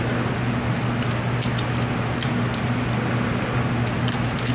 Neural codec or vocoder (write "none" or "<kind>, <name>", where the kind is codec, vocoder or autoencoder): none